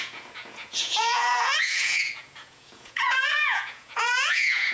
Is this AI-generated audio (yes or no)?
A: yes